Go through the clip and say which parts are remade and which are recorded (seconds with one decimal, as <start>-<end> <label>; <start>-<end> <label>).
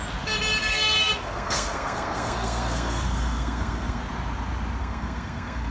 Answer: 0.0-0.6 recorded; 0.6-4.0 remade; 4.0-4.8 recorded; 4.8-5.7 remade